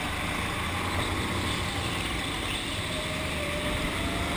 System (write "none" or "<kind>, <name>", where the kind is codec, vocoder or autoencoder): none